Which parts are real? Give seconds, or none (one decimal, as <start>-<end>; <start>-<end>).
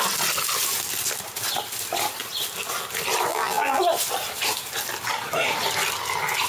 0.0-3.3; 3.8-6.5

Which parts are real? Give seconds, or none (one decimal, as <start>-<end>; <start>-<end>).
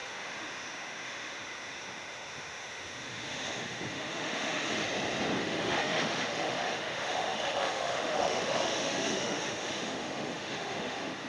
4.8-5.4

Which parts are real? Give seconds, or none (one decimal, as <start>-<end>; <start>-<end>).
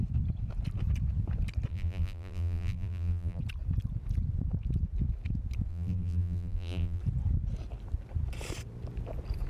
0.0-1.7; 3.4-5.7; 7.0-9.5